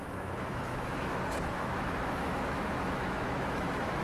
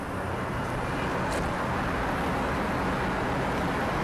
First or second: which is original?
second